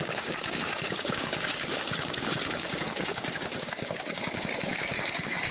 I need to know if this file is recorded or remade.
remade